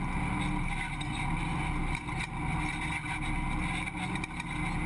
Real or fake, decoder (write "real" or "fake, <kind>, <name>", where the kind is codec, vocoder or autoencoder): real